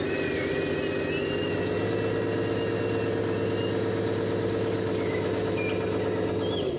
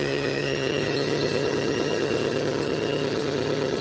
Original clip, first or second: first